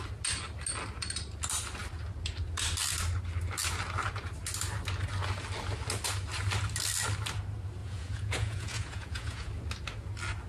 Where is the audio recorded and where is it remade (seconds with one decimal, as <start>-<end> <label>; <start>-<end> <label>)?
0.0-7.8 recorded; 7.8-9.5 remade; 9.5-10.5 recorded